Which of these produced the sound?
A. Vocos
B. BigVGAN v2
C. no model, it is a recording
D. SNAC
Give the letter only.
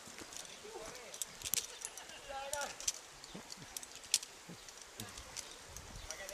C